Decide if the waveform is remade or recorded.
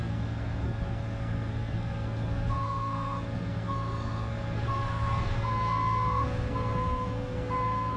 remade